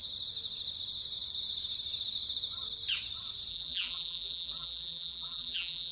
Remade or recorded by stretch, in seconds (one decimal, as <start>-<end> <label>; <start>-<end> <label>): 0.0-3.5 recorded; 3.5-5.9 remade